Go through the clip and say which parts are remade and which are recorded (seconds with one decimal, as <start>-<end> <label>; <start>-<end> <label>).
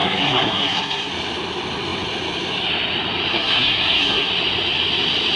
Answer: 0.0-1.1 remade; 1.1-3.3 recorded; 3.3-4.3 remade; 4.3-5.4 recorded